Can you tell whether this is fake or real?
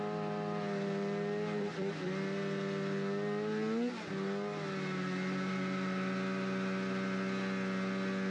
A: real